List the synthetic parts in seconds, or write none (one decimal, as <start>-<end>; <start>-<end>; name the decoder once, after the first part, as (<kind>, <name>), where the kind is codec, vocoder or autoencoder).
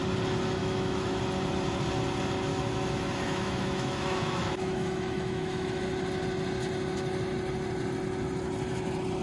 0.6-1.2 (autoencoder, DAC-VAE); 2.5-5.8